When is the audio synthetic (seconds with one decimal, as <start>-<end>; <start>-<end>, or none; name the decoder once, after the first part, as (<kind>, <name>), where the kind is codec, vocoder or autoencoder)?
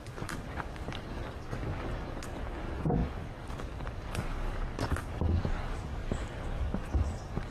0.0-7.5 (codec, DAC)